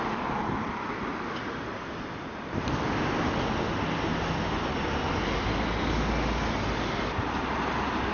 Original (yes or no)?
yes